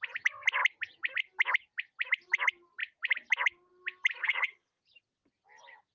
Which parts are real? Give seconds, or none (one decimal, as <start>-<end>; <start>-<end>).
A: 0.0-4.2; 4.8-5.9